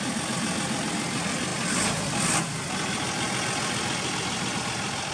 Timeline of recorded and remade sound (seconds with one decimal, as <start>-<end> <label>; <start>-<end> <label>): 0.0-5.1 recorded